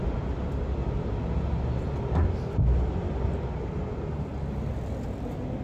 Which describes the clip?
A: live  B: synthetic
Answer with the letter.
A